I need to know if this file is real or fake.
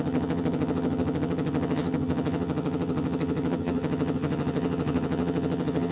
fake